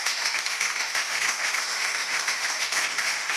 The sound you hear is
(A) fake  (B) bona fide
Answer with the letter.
A